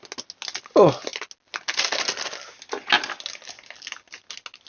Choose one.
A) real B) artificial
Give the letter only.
A